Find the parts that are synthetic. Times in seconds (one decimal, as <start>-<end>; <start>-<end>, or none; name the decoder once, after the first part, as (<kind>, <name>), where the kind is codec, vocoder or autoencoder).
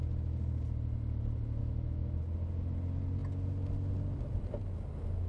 1.6-2.2 (autoencoder, DAC-VAE)